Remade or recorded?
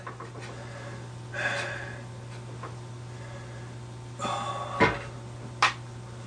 recorded